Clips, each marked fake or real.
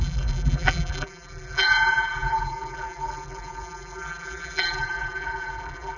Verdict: fake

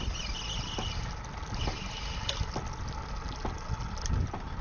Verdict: real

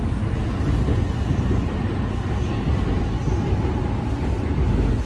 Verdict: real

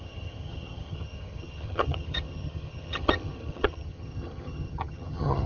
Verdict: fake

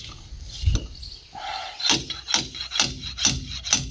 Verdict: real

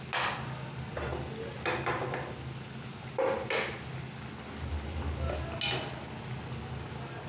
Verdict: real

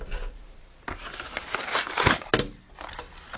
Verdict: real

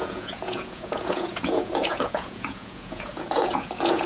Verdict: fake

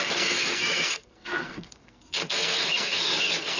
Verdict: fake